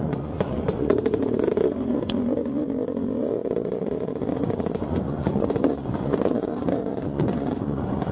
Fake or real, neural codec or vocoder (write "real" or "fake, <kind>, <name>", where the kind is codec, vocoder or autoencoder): fake, vocoder, Vocos